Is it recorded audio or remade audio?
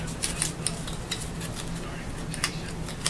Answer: recorded